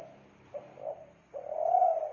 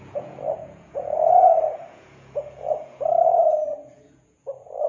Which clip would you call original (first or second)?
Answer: first